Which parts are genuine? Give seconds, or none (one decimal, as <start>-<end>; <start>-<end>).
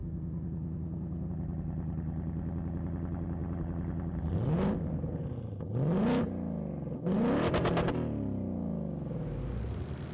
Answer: 1.3-10.1